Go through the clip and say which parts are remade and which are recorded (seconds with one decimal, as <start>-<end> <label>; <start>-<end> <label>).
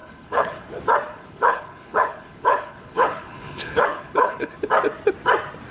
0.0-0.7 remade; 0.7-1.1 recorded; 1.1-4.5 remade; 4.5-5.7 recorded